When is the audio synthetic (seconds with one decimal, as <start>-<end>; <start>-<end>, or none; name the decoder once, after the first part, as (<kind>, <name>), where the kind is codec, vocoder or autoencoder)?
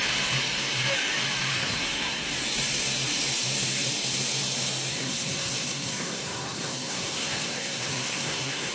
1.5-2.3 (codec, SNAC); 4.9-8.7